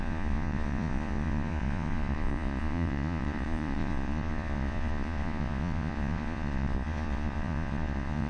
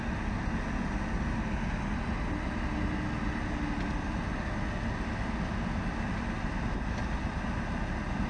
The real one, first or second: second